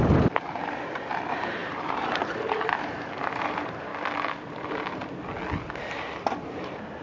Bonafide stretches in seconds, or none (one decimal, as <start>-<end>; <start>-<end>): 3.9-4.5; 5.0-6.2